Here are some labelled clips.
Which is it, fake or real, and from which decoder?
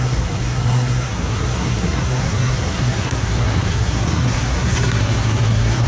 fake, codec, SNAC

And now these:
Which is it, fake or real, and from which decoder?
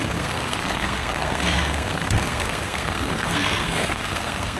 fake, codec, SNAC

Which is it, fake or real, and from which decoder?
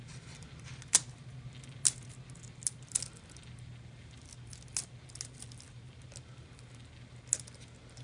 real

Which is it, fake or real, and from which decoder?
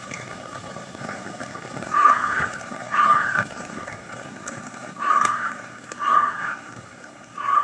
fake, codec, SNAC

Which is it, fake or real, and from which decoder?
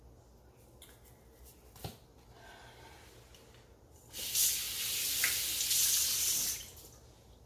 real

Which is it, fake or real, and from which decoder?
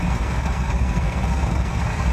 fake, codec, SNAC